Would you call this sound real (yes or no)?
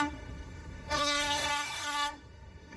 no